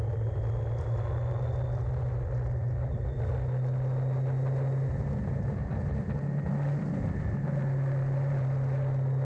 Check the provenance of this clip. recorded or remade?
recorded